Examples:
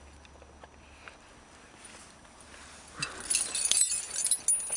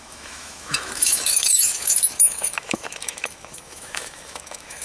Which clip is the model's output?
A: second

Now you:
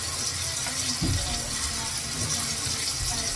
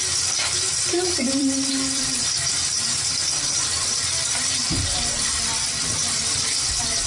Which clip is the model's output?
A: second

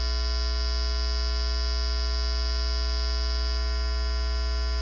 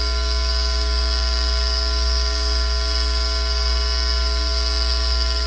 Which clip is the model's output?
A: second